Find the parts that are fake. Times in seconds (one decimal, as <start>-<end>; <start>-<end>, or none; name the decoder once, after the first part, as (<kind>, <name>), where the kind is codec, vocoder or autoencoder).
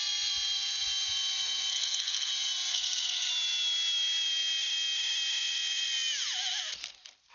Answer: 1.7-2.3 (codec, SNAC); 2.7-3.3